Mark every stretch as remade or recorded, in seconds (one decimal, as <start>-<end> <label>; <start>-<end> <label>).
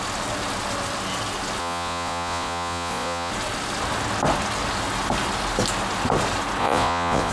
0.0-1.6 recorded; 1.6-3.3 remade; 3.3-6.6 recorded; 6.6-7.3 remade